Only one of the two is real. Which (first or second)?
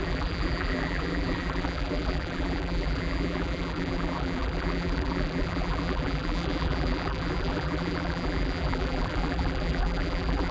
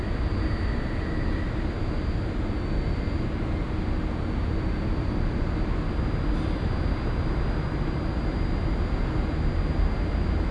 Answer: second